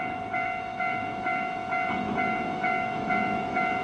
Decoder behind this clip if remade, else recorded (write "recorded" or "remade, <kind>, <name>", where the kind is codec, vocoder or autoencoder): remade, autoencoder, DAC-VAE